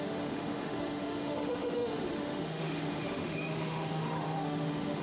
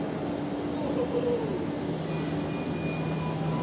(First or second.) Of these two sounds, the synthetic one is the first